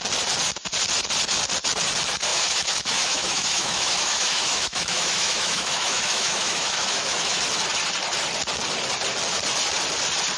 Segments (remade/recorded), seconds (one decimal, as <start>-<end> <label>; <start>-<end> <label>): 0.0-2.3 recorded; 2.3-7.4 remade; 7.4-10.4 recorded